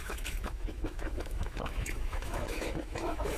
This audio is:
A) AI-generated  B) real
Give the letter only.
A